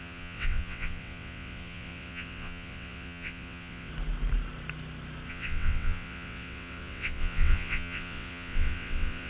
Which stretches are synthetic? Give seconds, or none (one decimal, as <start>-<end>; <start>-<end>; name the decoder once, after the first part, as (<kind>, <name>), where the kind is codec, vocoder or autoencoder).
0.0-3.9 (vocoder, WaveNeXt); 5.3-9.3